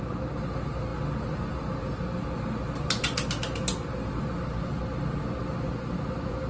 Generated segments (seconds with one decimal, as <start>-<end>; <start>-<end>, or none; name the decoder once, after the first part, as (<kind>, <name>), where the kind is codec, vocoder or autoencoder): none